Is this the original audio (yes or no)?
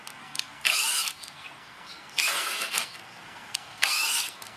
no